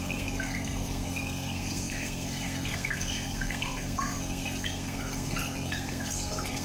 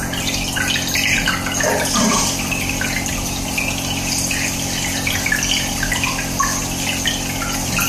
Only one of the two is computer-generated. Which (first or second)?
first